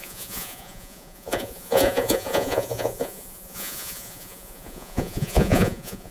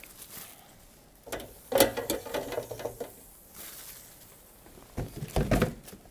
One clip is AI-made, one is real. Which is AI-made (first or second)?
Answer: first